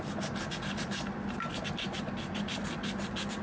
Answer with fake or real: real